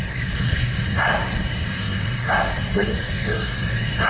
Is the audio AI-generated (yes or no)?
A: yes